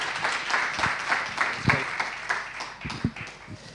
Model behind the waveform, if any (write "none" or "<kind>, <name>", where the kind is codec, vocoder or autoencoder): none